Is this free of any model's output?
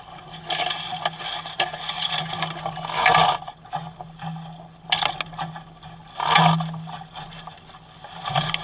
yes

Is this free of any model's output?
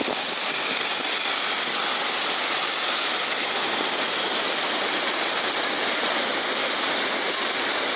no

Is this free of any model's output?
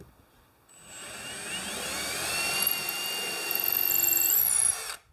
yes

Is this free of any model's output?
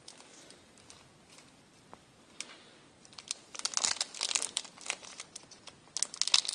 yes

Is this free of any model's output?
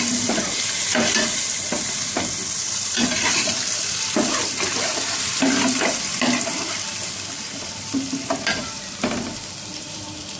no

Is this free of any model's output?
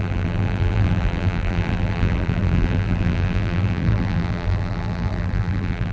no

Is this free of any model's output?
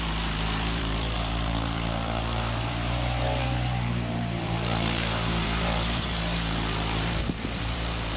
no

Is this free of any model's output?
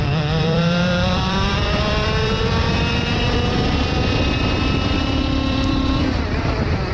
no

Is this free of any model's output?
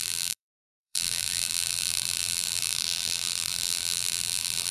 no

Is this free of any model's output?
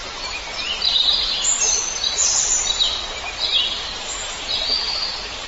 yes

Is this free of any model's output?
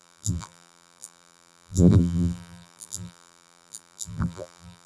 no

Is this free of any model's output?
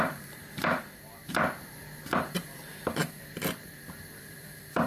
no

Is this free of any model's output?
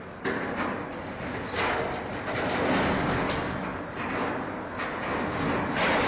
yes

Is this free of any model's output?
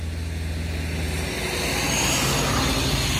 yes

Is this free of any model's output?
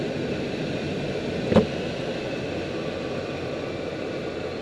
yes